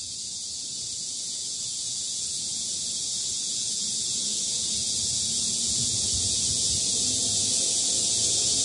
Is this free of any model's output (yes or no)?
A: no